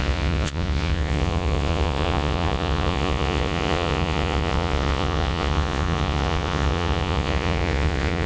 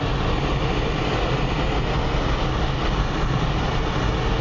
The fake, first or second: first